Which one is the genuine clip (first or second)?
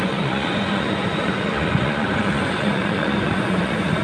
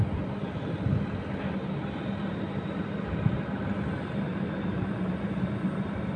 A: second